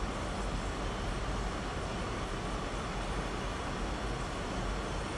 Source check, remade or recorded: recorded